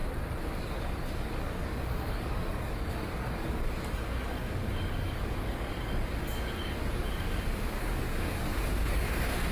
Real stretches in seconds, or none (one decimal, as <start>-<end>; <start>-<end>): 0.0-0.6